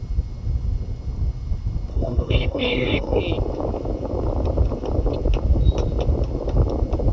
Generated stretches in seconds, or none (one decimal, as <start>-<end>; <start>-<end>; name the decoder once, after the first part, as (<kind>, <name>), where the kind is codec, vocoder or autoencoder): 1.9-3.2 (codec, SNAC)